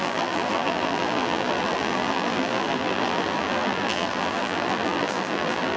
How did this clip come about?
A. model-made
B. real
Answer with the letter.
A